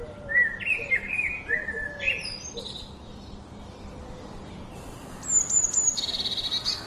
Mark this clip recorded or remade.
remade